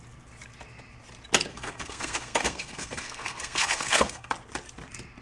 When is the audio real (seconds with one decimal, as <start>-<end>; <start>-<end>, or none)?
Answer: 0.0-1.5; 4.3-5.2